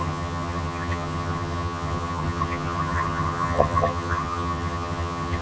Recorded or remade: remade